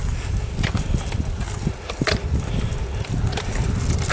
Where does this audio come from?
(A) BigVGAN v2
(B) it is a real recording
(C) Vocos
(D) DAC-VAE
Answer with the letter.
B